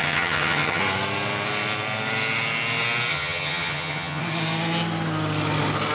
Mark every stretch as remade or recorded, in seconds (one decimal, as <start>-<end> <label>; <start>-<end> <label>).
0.0-0.8 remade; 0.8-3.1 recorded; 3.1-4.2 remade; 4.2-5.9 recorded